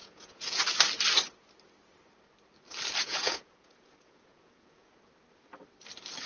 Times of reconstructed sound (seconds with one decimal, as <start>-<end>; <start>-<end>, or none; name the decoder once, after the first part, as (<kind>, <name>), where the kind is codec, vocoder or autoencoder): 0.0-0.6 (vocoder, Vocos); 3.0-5.1